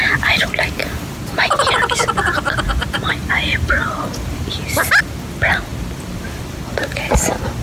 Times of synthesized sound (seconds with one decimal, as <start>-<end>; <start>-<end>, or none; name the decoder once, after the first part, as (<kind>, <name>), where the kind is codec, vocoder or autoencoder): 3.2-5.2 (vocoder, BigVGAN v2); 5.7-6.4